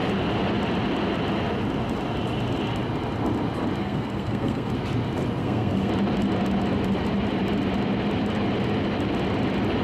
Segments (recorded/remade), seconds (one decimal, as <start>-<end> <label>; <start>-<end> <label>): 0.0-3.8 recorded; 3.8-4.7 remade; 4.7-5.4 recorded; 5.4-5.9 remade; 5.9-9.8 recorded

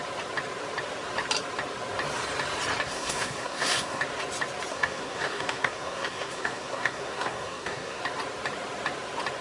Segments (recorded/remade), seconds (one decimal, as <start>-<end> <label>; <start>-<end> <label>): 0.0-2.9 recorded; 2.9-4.0 remade; 4.0-4.7 recorded; 4.7-8.0 remade; 8.0-9.4 recorded

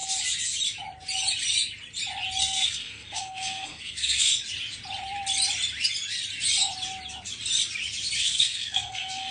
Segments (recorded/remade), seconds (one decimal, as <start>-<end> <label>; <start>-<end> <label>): 0.0-2.4 recorded; 2.4-4.3 remade; 4.3-8.2 recorded; 8.2-9.3 remade

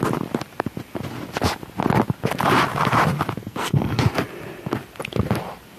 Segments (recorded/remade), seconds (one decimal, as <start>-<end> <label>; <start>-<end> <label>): 0.0-3.4 recorded; 3.4-4.0 remade; 4.0-5.8 recorded

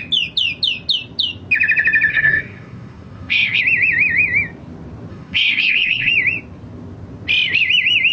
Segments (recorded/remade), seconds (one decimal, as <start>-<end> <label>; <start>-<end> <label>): 0.0-2.1 recorded; 2.1-3.6 remade; 3.6-5.1 recorded; 5.1-6.1 remade; 6.1-8.1 recorded

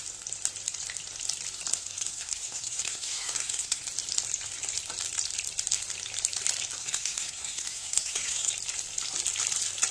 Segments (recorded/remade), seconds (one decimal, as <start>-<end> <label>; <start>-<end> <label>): 0.0-1.7 recorded; 1.7-3.8 remade; 3.8-6.8 recorded; 6.8-8.5 remade; 8.5-9.9 recorded